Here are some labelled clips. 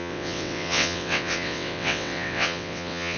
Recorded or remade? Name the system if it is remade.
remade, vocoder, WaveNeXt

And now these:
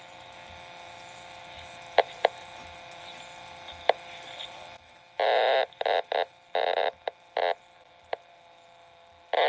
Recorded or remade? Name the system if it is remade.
recorded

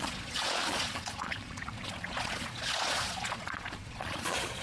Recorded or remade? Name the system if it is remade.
remade, vocoder, Vocos